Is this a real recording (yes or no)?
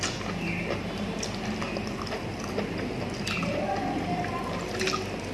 yes